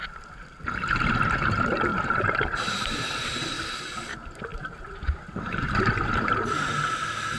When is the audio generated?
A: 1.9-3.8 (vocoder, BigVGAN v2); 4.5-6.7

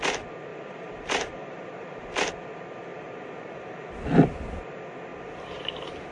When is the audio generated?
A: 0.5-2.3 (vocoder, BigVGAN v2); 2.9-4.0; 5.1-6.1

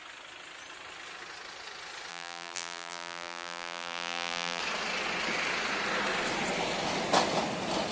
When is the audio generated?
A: 2.1-4.6 (vocoder, BigVGAN v2)